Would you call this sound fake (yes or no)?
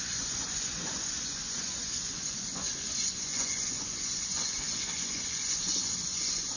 yes